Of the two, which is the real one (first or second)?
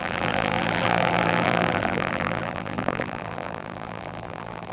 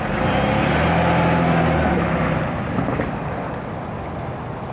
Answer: second